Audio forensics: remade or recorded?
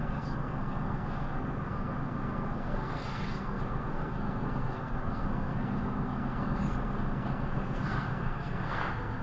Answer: remade